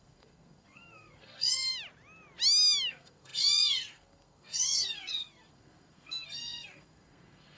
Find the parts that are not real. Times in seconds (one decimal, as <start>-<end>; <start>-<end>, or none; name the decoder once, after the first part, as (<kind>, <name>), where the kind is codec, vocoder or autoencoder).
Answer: 0.0-1.7 (codec, SNAC); 2.9-7.6

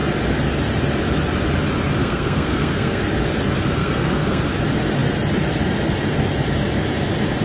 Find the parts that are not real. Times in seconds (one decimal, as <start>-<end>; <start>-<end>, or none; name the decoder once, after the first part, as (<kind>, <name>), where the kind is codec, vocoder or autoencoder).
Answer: 2.0-3.0 (codec, SNAC); 3.8-4.4

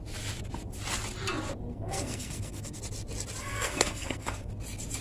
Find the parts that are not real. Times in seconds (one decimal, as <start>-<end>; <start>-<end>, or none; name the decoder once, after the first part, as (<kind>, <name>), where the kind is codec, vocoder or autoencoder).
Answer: 1.7-2.8 (codec, SNAC); 3.4-4.5

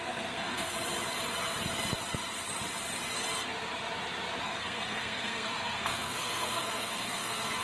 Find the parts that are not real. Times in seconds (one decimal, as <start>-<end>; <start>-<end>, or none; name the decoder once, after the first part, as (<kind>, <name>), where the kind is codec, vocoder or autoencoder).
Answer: 0.0-0.7 (codec, SNAC); 4.4-7.6

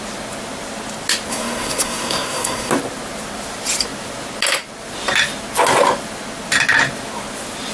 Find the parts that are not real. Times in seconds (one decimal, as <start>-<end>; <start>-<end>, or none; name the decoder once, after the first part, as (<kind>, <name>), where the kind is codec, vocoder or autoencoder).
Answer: 1.3-2.7 (codec, SNAC)

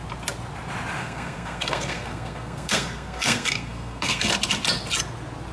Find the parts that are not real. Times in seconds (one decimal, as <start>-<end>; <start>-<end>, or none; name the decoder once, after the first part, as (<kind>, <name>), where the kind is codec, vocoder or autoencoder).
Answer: 1.0-4.3 (codec, SNAC)

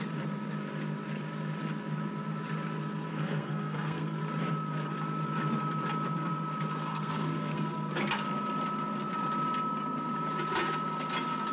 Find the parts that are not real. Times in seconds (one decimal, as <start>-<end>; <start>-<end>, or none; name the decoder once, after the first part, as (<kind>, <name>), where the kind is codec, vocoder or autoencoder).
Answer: 3.1-4.2 (codec, SNAC); 6.9-7.9

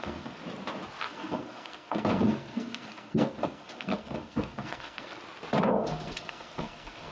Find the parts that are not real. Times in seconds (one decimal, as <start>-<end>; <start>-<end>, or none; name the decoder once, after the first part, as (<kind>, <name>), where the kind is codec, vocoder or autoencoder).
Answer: 0.0-0.4 (codec, SNAC); 1.0-5.2; 5.7-7.1